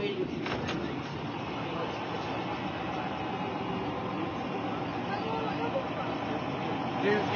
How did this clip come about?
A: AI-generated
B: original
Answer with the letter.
B